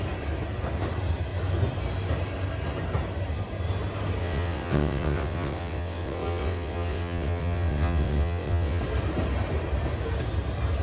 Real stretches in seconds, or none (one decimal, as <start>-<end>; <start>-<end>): 0.0-4.2; 8.8-10.8